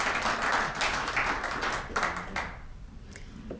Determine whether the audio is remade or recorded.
recorded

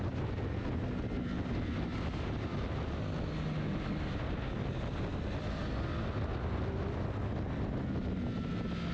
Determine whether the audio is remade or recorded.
recorded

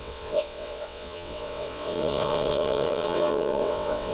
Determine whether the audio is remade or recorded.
remade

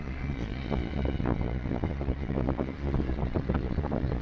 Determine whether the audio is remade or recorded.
remade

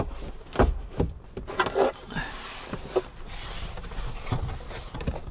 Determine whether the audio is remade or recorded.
recorded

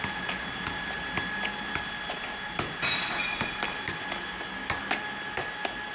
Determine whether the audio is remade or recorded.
recorded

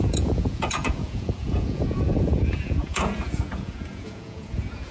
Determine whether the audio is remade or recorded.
remade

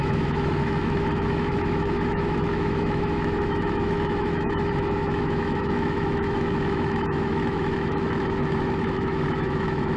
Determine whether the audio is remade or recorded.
remade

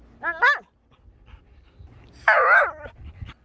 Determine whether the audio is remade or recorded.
recorded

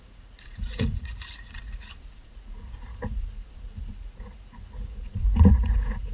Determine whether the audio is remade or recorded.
remade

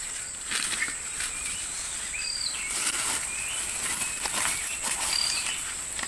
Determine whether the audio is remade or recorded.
recorded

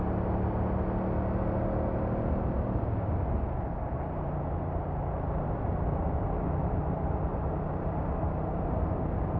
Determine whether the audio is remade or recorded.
recorded